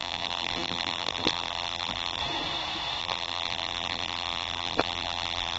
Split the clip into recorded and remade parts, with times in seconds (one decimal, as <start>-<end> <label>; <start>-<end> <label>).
0.0-2.2 remade; 2.2-3.0 recorded; 3.0-5.6 remade